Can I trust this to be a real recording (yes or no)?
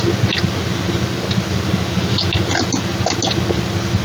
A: yes